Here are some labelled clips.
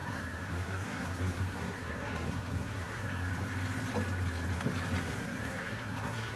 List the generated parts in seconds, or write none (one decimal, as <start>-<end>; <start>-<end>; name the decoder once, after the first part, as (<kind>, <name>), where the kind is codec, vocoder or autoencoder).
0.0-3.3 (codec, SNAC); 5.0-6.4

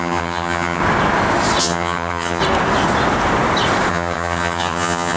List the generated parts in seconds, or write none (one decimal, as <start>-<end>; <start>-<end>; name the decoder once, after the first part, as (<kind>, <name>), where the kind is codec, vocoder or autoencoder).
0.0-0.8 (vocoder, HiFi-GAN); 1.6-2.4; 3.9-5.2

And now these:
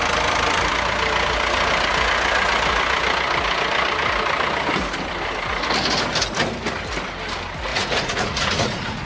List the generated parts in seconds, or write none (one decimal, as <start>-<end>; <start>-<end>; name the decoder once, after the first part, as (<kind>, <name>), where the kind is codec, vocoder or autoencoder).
7.7-9.1 (vocoder, Vocos)

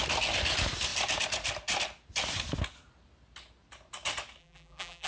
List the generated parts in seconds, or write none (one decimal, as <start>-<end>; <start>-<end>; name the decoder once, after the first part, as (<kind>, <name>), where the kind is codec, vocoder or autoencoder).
4.4-5.1 (vocoder, BigVGAN v2)

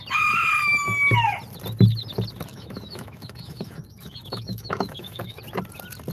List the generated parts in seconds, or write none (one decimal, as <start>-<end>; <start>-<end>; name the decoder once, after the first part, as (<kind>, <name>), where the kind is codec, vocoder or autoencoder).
2.5-5.4 (autoencoder, DAC-VAE)

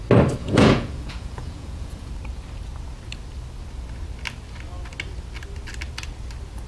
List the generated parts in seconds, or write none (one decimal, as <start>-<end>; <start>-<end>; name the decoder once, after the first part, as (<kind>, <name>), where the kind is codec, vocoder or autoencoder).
0.4-2.1 (vocoder, Vocos)

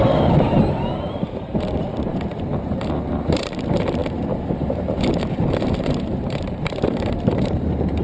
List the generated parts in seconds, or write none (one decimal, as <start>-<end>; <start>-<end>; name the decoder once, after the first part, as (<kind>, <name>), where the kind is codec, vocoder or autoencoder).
0.0-8.0 (vocoder, BigVGAN v2)

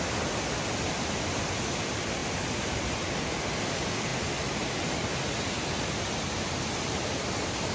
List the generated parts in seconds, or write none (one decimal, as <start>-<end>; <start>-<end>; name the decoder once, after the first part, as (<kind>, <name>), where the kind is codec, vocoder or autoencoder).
none